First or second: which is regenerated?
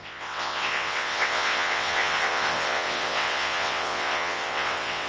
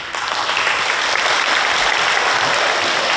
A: first